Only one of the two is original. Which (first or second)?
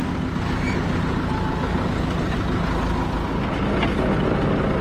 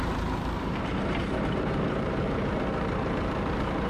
first